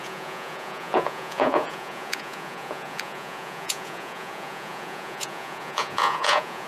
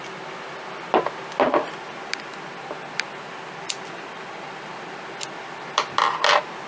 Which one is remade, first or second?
first